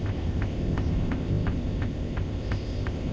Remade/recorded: remade